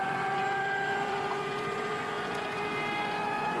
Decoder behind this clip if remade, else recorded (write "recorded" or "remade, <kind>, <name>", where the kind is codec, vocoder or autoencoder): remade, vocoder, Vocos